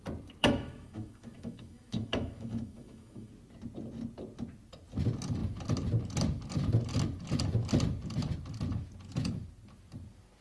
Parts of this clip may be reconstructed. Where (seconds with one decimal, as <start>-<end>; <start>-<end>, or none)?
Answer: 0.4-3.3